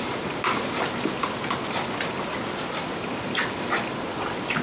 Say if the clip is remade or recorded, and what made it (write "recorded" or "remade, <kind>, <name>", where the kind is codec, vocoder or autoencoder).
recorded